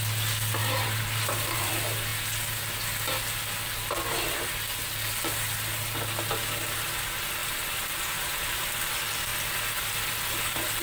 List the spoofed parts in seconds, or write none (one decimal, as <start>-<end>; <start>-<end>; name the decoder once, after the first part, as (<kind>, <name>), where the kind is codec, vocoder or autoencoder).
0.6-1.7 (vocoder, BigVGAN v2); 7.4-8.9